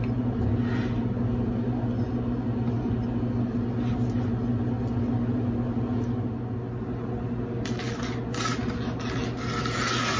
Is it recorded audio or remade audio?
recorded